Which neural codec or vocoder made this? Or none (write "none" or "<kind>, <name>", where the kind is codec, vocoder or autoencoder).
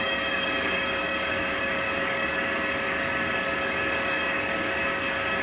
codec, DAC